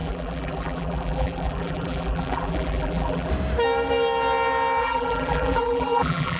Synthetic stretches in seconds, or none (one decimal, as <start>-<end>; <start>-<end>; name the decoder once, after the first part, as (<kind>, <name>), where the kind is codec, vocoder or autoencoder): 0.0-3.3 (vocoder, BigVGAN v2); 4.8-6.4